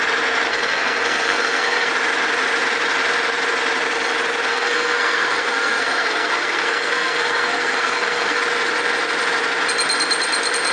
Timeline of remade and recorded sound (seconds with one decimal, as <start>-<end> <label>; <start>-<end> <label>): 0.0-0.5 recorded; 0.5-1.9 remade; 1.9-4.5 recorded; 4.5-8.4 remade; 8.4-10.7 recorded

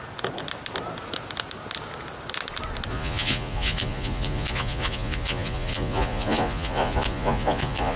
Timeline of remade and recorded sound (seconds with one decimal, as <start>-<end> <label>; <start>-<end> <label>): 0.0-2.9 recorded; 2.9-8.0 remade

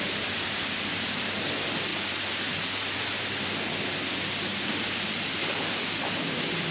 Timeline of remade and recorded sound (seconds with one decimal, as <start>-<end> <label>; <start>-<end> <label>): 0.0-6.7 recorded

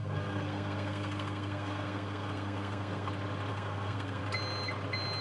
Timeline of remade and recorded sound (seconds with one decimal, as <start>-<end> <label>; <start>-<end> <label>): 0.0-3.1 remade; 3.1-3.5 recorded; 3.5-4.2 remade; 4.2-5.2 recorded

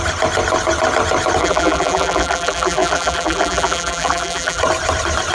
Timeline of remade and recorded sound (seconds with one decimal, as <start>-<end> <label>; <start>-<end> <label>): 0.0-1.4 recorded; 1.4-4.6 remade; 4.6-5.3 recorded

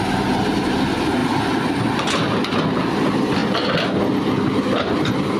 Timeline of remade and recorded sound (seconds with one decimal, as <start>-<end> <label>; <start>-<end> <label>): 0.0-5.4 recorded

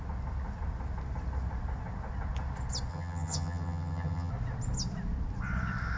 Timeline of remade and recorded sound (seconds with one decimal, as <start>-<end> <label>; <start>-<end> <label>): 0.0-2.9 recorded; 2.9-4.3 remade; 4.3-6.0 recorded

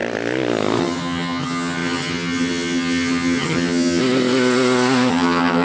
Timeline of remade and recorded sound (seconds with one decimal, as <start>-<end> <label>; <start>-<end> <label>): 0.0-0.8 recorded; 0.8-4.0 remade; 4.0-5.1 recorded; 5.1-5.6 remade